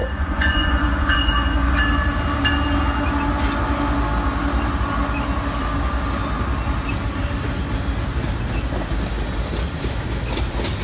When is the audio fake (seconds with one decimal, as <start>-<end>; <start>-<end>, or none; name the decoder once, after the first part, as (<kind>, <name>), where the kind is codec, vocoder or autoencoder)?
0.0-1.8 (vocoder, Vocos)